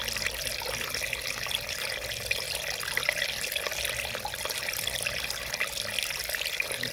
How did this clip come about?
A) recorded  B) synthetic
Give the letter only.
A